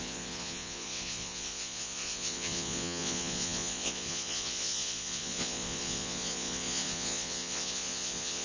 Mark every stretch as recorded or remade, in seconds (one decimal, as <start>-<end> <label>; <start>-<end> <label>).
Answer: 0.0-8.4 remade